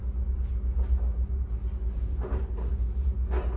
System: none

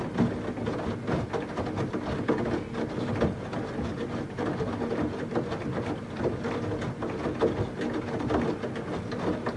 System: none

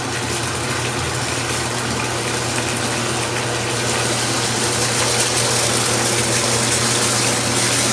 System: none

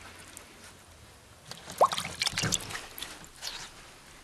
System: none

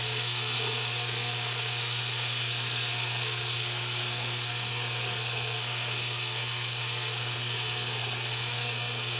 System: codec, SNAC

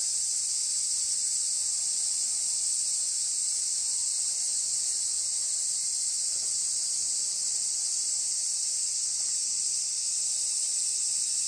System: none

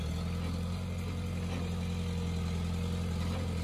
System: none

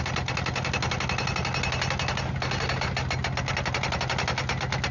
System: none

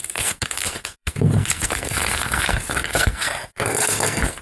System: codec, SNAC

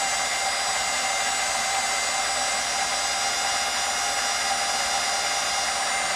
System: none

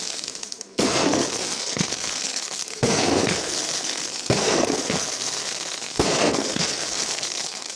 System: codec, SNAC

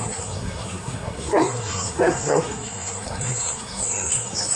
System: codec, SNAC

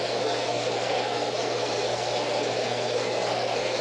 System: codec, SNAC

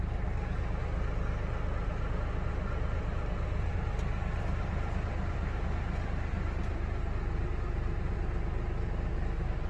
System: none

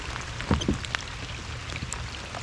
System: none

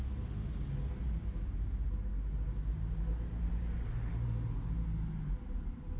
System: none